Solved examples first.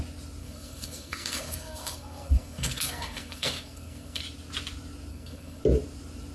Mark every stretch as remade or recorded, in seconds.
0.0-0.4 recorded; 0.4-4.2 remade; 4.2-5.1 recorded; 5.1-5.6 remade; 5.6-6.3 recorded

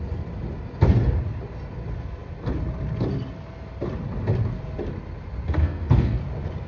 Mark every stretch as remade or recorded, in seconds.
0.0-5.6 recorded; 5.6-6.2 remade; 6.2-6.7 recorded

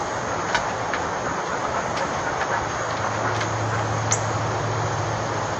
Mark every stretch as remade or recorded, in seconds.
0.0-5.6 recorded

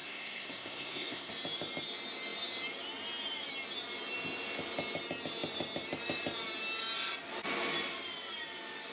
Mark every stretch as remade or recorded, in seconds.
0.0-1.3 remade; 1.3-8.9 recorded

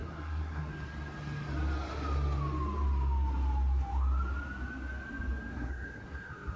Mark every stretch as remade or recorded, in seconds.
0.0-0.7 remade; 0.7-5.5 recorded; 5.5-6.6 remade

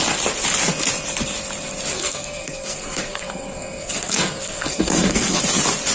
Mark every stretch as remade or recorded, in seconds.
0.0-1.9 recorded; 1.9-5.4 remade; 5.4-5.9 recorded

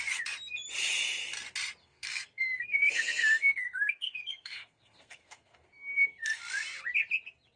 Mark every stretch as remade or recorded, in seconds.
0.0-1.8 recorded; 1.8-6.4 remade; 6.4-7.6 recorded